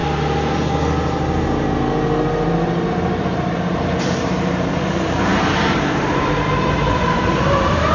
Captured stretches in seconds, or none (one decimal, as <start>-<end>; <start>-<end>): 0.0-2.9